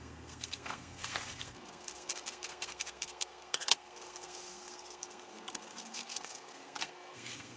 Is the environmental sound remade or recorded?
remade